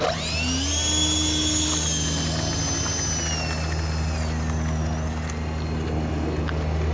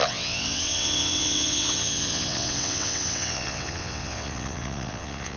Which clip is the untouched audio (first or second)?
first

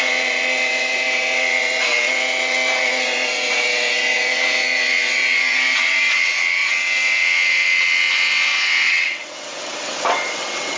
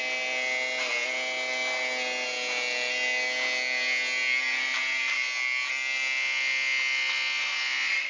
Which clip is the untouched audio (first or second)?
second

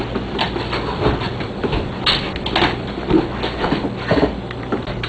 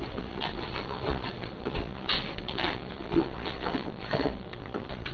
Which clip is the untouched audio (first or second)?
first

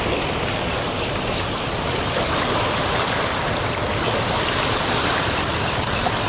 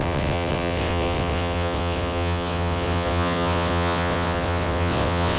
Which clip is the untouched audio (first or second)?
first